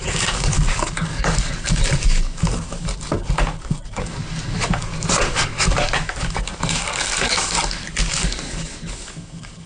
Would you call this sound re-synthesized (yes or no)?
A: yes